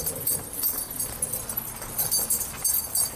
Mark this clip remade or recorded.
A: recorded